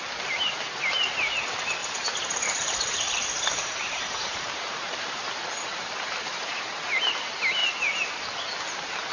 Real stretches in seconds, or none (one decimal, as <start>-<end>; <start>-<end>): 0.0-1.8; 6.6-9.1